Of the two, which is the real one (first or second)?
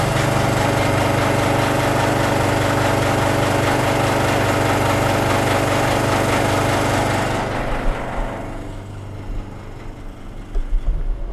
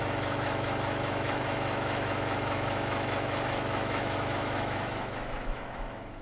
first